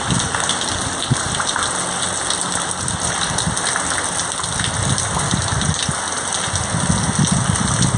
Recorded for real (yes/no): yes